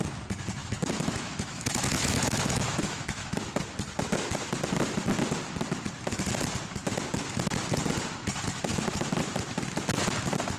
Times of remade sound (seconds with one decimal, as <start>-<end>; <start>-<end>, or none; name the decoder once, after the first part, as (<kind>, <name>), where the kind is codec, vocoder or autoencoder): 0.6-3.4 (autoencoder, DAC-VAE)